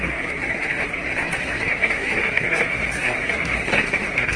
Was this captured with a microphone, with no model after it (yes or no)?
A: no